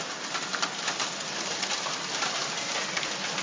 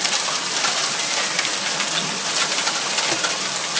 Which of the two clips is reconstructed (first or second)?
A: second